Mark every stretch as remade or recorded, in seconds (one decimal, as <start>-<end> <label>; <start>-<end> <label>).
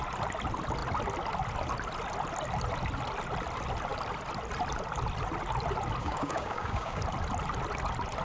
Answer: 0.0-6.0 recorded; 6.0-7.0 remade; 7.0-8.2 recorded